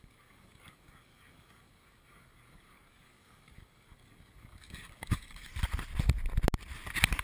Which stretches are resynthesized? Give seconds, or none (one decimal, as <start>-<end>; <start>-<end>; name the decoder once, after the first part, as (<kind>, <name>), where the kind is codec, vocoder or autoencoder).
0.0-5.5 (codec, DAC)